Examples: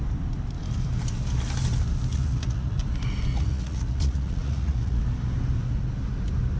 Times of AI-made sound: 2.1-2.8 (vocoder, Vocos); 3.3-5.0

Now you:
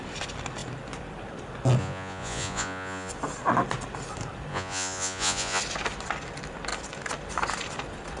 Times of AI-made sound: 1.8-3.1 (vocoder, Vocos); 4.5-5.6

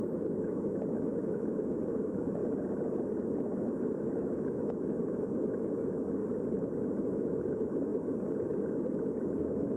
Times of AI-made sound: 0.0-2.4 (autoencoder, DAC-VAE); 4.0-6.2; 7.0-7.9; 9.4-9.8

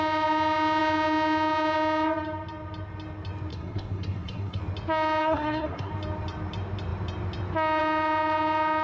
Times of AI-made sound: 3.5-4.6 (codec, SNAC); 5.2-5.9

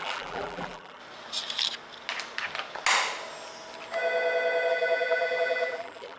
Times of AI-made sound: 0.0-1.0 (vocoder, BigVGAN v2); 4.7-6.2

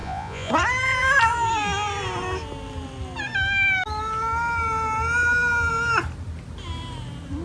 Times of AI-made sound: 0.0-0.5 (vocoder, Vocos)